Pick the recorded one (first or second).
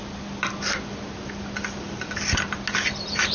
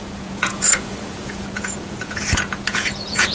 first